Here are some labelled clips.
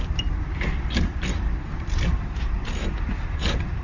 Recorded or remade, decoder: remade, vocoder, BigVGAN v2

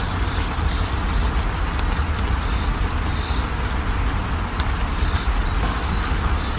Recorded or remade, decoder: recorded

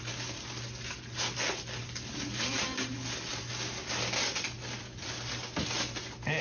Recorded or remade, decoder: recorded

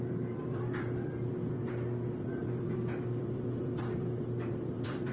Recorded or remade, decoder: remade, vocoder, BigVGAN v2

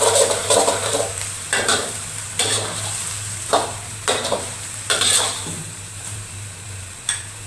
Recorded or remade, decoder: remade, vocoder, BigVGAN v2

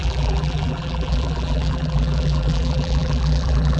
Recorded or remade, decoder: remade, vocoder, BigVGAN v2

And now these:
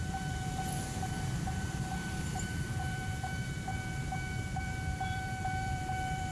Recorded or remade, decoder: remade, vocoder, BigVGAN v2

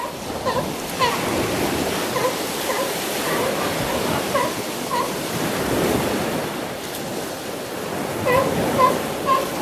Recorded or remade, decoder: recorded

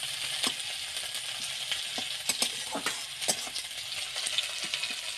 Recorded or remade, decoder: recorded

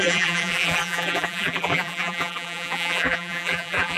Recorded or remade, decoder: remade, vocoder, BigVGAN v2